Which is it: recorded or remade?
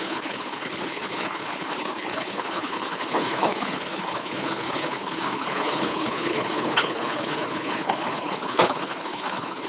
remade